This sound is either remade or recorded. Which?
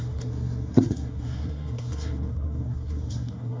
remade